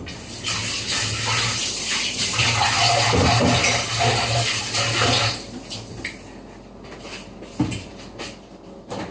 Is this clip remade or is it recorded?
recorded